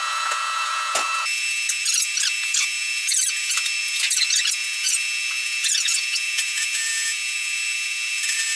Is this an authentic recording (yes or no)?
no